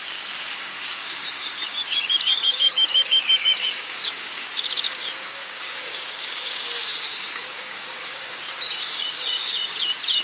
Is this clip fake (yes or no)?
yes